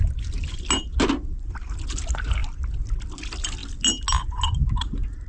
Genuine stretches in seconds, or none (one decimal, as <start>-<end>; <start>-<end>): 0.0-5.3